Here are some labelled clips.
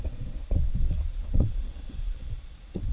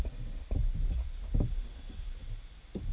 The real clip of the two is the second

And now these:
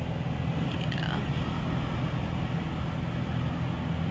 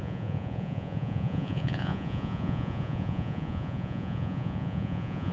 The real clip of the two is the first